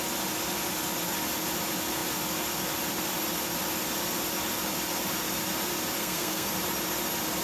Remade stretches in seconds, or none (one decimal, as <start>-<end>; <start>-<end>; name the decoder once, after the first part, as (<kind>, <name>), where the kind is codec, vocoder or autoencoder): 6.0-6.5 (codec, SNAC)